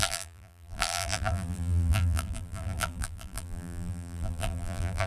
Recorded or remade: remade